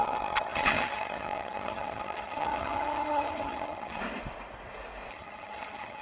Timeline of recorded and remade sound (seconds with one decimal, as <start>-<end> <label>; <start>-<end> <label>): 0.0-4.0 remade; 4.0-5.1 recorded; 5.1-6.0 remade